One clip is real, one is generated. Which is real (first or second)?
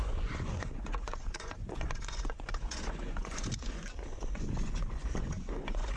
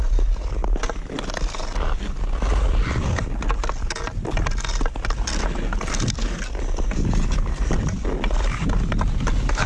second